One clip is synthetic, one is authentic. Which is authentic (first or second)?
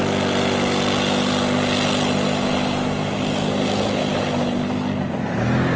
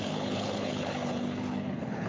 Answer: first